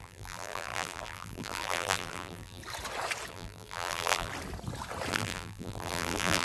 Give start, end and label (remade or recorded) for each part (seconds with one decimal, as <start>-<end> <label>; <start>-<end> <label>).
0.0-2.6 remade; 2.6-3.3 recorded; 3.3-4.3 remade; 4.3-5.1 recorded; 5.1-6.4 remade